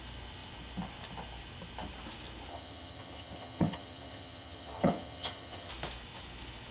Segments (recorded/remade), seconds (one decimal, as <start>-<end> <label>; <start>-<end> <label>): 0.0-2.5 recorded; 2.5-5.7 remade; 5.7-6.7 recorded